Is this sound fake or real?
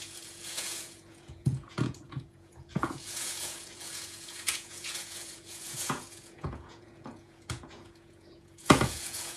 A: fake